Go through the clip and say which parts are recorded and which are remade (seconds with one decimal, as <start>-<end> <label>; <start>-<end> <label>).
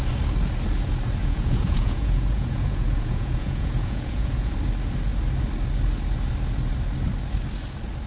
0.0-1.2 recorded; 1.2-4.5 remade; 4.5-8.1 recorded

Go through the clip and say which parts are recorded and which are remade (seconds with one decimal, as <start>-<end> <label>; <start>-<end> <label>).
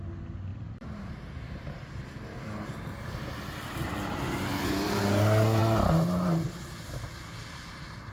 0.0-0.5 recorded; 0.5-1.4 remade; 1.4-4.5 recorded; 4.5-5.0 remade; 5.0-8.1 recorded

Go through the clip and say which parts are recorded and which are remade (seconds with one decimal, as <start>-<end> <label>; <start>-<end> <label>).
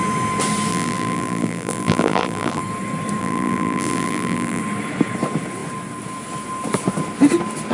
0.0-0.7 recorded; 0.7-2.6 remade; 2.6-3.2 recorded; 3.2-4.6 remade; 4.6-7.7 recorded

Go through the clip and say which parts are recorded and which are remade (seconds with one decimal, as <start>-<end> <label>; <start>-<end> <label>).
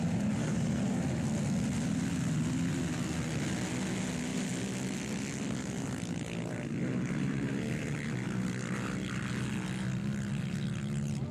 0.0-0.4 recorded; 0.4-1.0 remade; 1.0-11.3 recorded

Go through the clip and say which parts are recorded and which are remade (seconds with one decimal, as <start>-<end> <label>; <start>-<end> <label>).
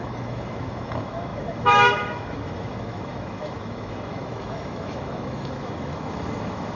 0.0-6.8 remade